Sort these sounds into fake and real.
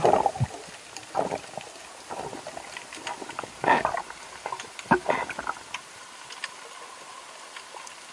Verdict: real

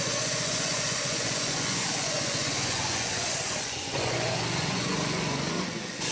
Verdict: fake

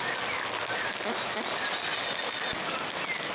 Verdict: real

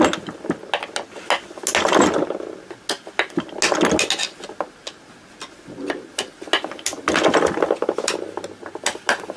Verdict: real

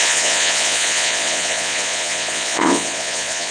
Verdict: fake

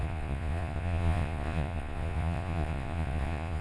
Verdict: fake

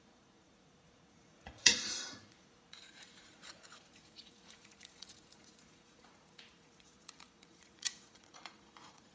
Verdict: fake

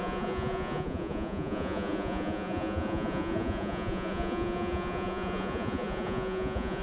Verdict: fake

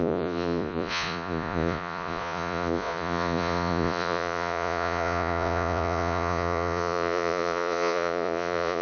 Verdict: fake